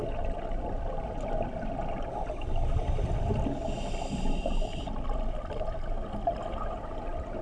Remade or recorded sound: recorded